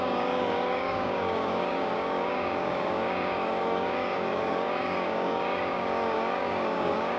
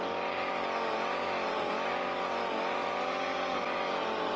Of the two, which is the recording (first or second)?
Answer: second